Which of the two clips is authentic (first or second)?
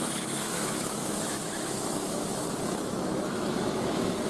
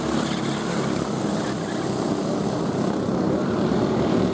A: second